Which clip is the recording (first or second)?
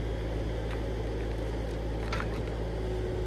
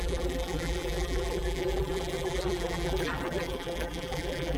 first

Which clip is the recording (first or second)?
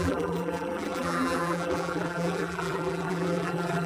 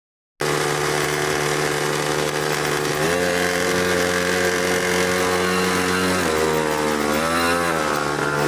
second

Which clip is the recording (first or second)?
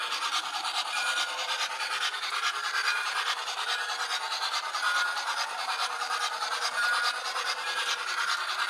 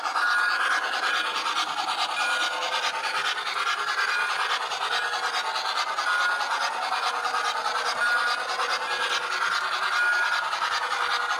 second